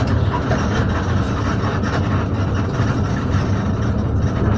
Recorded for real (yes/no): yes